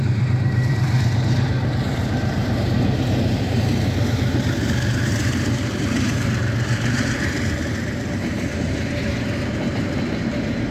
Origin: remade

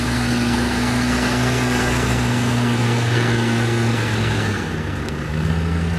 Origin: remade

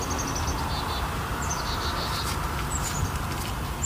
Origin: recorded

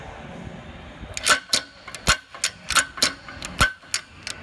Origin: recorded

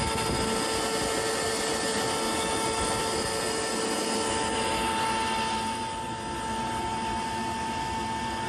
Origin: recorded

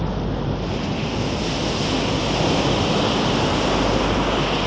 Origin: recorded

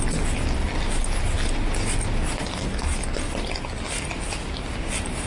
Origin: recorded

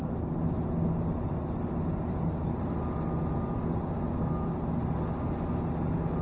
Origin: recorded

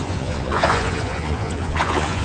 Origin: remade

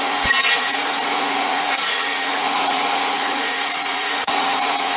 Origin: remade